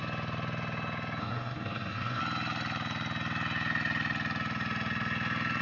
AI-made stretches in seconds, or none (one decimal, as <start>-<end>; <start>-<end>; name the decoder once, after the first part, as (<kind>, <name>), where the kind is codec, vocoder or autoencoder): 1.2-2.2 (codec, SNAC)